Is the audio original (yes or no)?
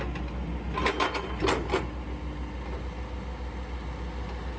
yes